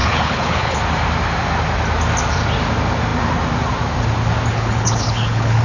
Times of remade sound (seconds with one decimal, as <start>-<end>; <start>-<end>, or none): 0.0-0.8; 4.5-5.6